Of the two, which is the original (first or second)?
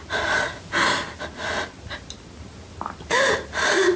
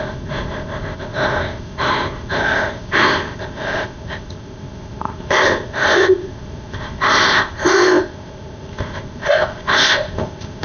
first